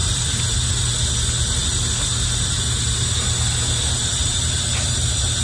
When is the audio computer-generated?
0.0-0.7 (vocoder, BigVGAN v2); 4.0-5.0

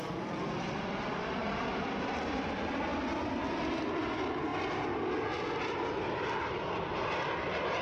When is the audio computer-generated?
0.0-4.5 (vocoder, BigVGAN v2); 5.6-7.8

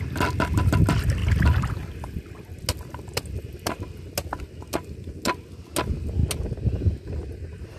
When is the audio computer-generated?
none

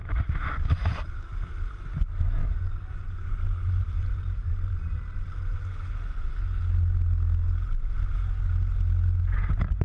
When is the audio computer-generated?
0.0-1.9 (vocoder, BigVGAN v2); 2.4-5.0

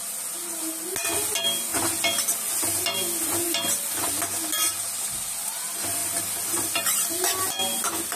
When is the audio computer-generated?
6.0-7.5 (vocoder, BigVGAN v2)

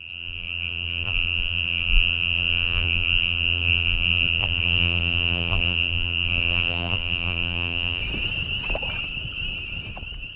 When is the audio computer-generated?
0.0-8.0 (vocoder, BigVGAN v2)